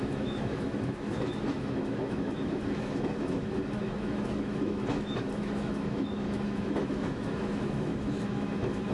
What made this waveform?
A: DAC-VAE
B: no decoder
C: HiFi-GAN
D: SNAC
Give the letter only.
A